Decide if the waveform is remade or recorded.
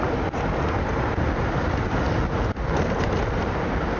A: recorded